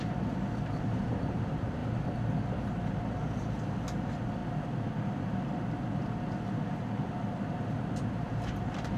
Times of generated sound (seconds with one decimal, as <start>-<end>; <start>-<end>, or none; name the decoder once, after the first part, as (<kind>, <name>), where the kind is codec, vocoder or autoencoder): 0.0-1.8 (vocoder, BigVGAN v2); 2.6-4.4; 7.6-9.0